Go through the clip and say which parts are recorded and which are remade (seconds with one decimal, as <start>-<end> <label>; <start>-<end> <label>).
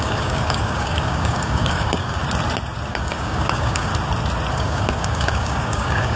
0.0-2.2 remade; 2.2-2.9 recorded; 2.9-3.9 remade; 3.9-4.5 recorded; 4.5-6.2 remade